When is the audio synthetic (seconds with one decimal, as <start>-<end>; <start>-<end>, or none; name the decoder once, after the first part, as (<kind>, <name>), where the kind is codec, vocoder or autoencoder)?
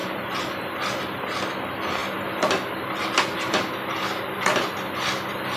0.0-0.7 (vocoder, BigVGAN v2)